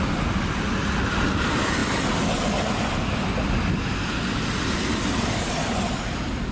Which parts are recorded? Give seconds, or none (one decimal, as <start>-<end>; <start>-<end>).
0.0-6.5